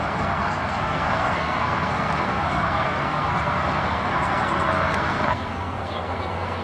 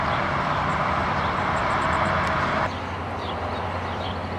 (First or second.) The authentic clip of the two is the second